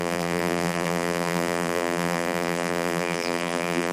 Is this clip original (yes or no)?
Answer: no